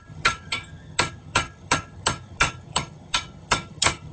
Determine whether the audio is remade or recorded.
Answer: remade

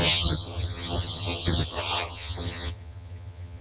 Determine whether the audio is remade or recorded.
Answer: remade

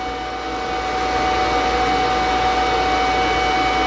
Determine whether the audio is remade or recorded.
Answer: recorded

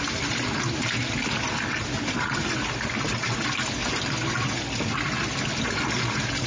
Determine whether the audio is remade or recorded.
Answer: recorded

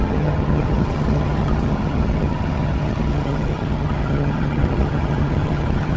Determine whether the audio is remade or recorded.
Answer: remade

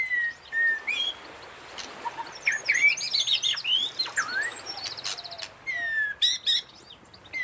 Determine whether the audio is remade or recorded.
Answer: recorded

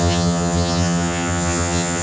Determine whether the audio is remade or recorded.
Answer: remade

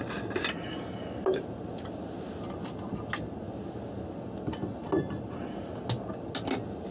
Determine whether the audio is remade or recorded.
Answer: recorded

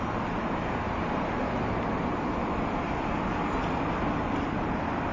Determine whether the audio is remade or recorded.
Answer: recorded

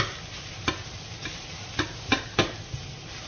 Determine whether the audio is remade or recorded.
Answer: recorded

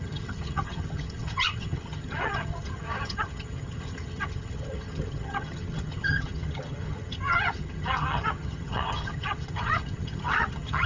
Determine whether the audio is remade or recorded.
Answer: remade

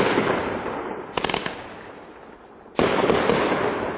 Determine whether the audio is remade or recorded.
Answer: recorded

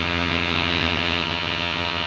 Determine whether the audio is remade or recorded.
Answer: remade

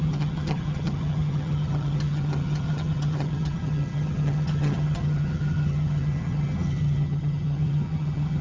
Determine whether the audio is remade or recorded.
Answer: remade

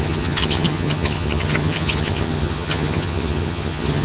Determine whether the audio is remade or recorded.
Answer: remade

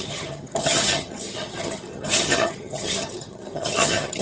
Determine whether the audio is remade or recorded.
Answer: remade